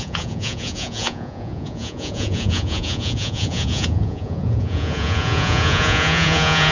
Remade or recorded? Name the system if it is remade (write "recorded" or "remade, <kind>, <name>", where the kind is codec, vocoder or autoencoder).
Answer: remade, vocoder, Vocos